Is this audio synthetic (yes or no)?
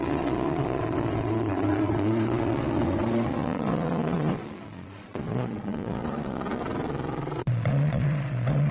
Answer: yes